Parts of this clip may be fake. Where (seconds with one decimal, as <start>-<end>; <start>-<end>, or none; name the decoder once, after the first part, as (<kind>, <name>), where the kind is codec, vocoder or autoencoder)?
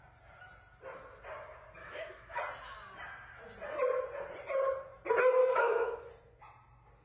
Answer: 1.8-2.4 (autoencoder, DAC-VAE); 5.4-6.1